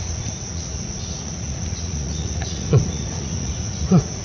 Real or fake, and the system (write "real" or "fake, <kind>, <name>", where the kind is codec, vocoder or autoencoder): fake, vocoder, Vocos